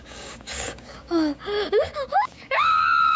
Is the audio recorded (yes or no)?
no